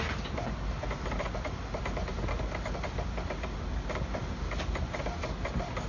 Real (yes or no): yes